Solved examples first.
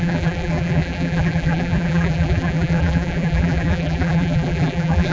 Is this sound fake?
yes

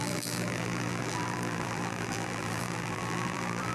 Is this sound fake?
yes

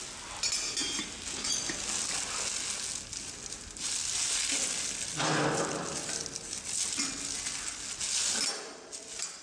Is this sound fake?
no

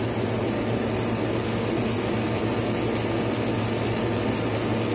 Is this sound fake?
no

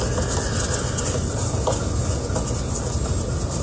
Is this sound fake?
no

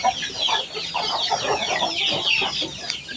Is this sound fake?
no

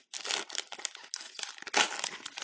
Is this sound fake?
no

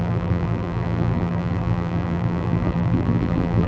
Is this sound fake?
yes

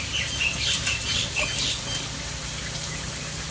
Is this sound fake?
no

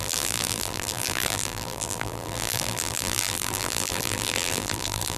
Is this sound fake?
yes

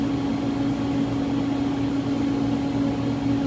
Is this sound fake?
no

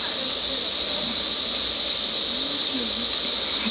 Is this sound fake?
no